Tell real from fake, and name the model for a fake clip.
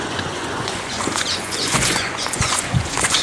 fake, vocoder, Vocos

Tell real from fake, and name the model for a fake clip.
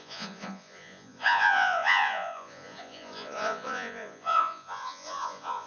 fake, vocoder, Vocos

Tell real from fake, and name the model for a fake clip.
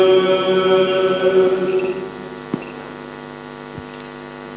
real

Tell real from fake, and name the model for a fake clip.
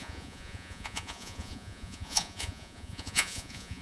fake, vocoder, Vocos